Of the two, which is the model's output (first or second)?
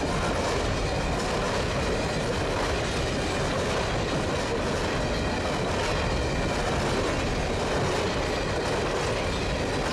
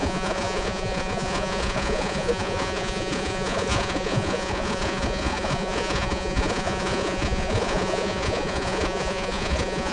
second